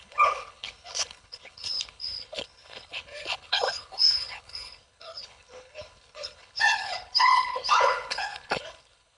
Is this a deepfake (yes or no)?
yes